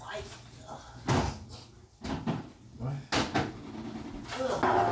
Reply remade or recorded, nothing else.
recorded